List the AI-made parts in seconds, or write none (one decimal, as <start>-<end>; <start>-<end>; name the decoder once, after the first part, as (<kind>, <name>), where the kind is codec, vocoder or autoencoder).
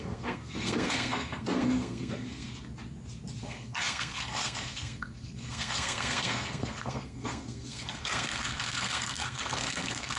0.0-2.5 (codec, SNAC); 3.4-10.2